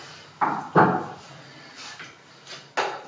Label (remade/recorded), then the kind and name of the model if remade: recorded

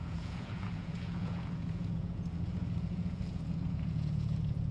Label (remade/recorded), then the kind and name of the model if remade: remade, vocoder, Vocos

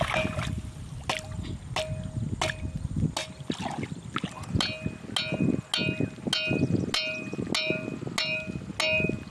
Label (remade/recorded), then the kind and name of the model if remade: recorded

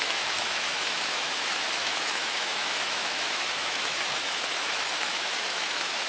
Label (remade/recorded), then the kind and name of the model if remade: remade, autoencoder, DAC-VAE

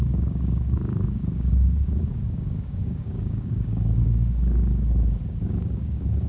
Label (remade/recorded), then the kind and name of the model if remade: remade, codec, DAC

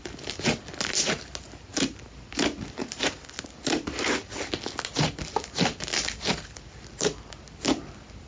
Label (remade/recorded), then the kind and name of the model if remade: recorded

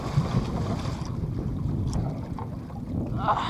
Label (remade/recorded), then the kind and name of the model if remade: recorded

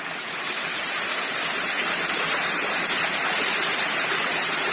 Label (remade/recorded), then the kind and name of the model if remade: recorded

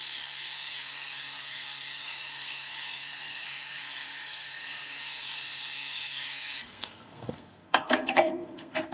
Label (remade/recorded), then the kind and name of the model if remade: remade, codec, SNAC